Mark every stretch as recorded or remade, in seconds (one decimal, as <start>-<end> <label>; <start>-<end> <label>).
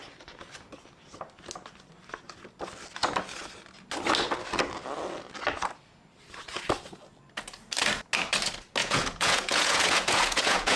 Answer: 0.0-8.8 recorded; 8.8-10.8 remade